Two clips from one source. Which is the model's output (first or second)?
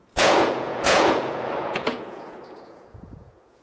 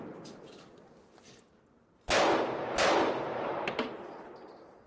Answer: first